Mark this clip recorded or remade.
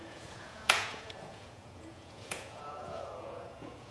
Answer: remade